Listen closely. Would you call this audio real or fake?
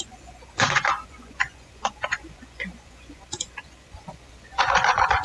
fake